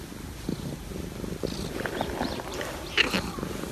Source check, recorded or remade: recorded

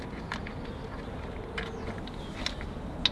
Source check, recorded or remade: recorded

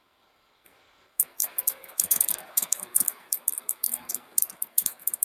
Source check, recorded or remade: remade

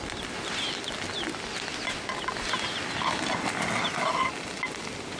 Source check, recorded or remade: recorded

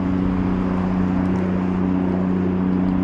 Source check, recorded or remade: recorded